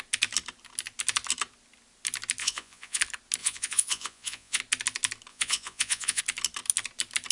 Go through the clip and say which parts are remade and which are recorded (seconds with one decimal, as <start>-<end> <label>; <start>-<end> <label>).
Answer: 0.0-2.4 recorded; 2.4-3.0 remade; 3.0-3.4 recorded; 3.4-4.6 remade; 4.6-5.3 recorded; 5.3-6.2 remade; 6.2-7.3 recorded

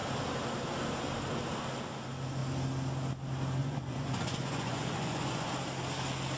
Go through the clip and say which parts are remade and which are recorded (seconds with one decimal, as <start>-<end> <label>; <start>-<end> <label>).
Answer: 0.0-3.6 recorded; 3.6-5.5 remade; 5.5-6.4 recorded